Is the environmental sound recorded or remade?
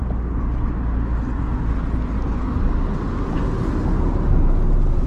recorded